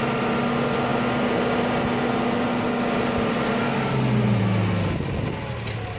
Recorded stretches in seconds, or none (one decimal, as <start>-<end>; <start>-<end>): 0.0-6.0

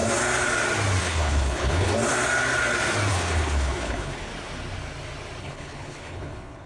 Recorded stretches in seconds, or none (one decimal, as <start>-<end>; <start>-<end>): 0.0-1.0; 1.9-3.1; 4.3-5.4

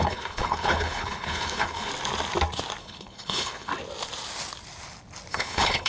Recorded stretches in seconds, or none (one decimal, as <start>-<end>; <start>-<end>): 1.9-2.8; 3.7-5.3

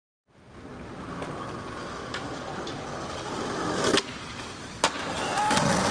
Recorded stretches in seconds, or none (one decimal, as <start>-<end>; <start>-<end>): 0.0-5.9

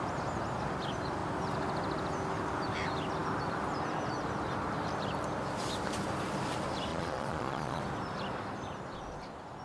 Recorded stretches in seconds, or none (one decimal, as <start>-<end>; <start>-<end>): 0.0-6.9; 7.8-9.6